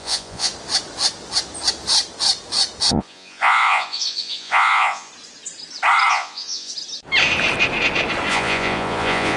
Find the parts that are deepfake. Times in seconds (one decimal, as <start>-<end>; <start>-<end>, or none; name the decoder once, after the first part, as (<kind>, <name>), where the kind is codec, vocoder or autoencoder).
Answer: 0.0-0.5 (vocoder, Vocos); 2.9-5.1; 6.1-6.7; 8.3-9.4